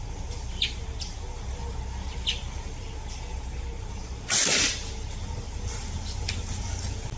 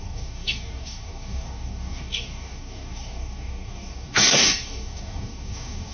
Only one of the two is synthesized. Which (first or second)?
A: second